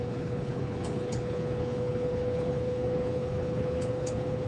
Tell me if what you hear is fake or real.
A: fake